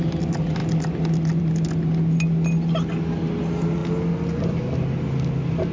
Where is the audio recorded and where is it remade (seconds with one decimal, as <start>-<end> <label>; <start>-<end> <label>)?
0.0-5.7 recorded